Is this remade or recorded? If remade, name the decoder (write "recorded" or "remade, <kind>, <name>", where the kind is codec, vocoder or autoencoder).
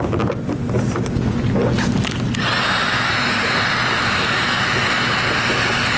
recorded